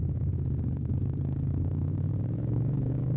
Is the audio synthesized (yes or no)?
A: yes